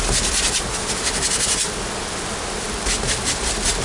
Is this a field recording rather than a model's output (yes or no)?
yes